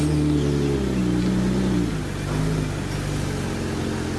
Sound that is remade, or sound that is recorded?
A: recorded